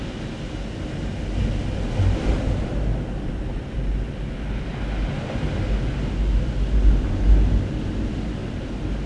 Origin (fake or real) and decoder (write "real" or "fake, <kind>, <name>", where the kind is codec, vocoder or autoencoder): real